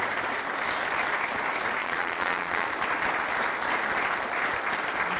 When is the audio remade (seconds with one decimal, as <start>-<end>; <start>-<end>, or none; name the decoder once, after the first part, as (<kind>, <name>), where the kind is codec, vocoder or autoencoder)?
1.8-2.7 (vocoder, Vocos)

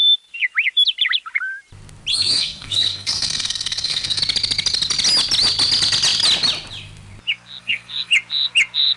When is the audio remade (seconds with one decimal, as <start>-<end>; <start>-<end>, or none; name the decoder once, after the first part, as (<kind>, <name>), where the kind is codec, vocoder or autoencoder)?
2.1-4.2 (codec, SNAC); 7.6-8.1

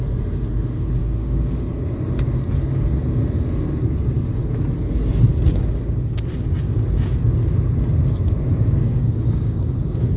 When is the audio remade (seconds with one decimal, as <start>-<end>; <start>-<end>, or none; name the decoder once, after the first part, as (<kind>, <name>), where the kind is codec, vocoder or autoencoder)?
1.0-1.5 (codec, DAC); 5.3-6.3; 8.5-10.2